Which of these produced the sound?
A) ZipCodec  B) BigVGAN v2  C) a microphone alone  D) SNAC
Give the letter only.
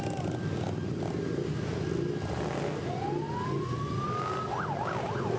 C